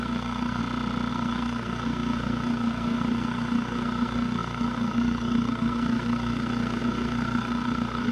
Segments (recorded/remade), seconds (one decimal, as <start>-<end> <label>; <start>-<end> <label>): 0.0-0.6 remade; 0.6-1.1 recorded; 1.1-8.1 remade